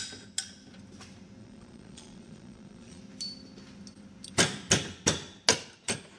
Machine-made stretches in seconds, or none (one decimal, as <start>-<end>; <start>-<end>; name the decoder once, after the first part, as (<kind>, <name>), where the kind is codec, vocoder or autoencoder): 1.4-3.0 (vocoder, Vocos)